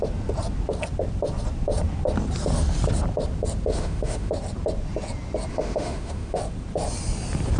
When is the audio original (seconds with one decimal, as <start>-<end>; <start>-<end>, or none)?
0.0-3.7; 4.3-5.5; 6.4-7.6